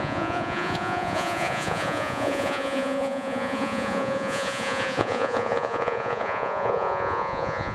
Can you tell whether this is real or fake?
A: fake